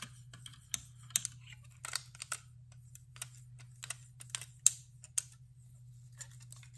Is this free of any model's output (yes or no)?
yes